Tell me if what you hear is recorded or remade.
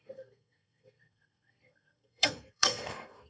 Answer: remade